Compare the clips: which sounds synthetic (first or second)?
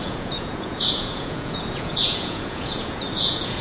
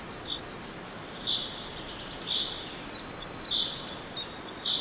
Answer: first